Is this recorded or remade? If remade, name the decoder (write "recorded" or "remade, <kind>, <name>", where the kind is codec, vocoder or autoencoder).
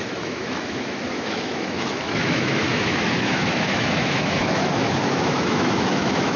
remade, autoencoder, DAC-VAE